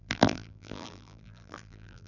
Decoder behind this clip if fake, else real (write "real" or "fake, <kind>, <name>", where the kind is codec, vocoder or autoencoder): fake, vocoder, BigVGAN v2